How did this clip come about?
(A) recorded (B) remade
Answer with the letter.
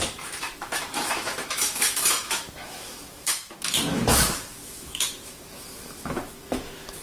B